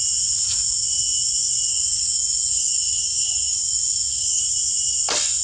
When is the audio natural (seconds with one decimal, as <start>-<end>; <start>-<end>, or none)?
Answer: 0.0-1.7; 4.4-5.4